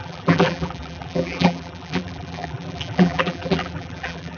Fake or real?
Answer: fake